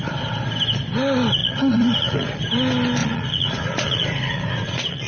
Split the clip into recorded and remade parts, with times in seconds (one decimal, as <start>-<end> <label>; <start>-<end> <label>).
0.0-1.4 recorded; 1.4-2.4 remade; 2.4-3.0 recorded; 3.0-5.1 remade